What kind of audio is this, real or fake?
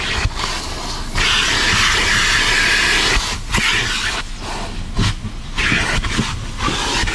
real